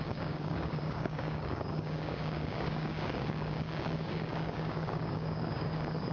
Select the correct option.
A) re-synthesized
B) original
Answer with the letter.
A